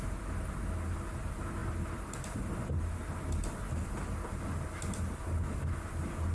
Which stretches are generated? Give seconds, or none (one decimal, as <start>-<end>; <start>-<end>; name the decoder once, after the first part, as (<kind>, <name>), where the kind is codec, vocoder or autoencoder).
none